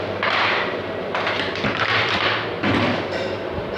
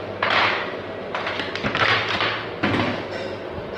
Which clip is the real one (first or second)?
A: second